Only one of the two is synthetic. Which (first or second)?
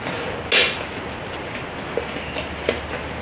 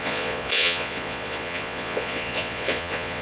second